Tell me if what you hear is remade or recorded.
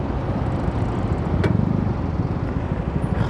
recorded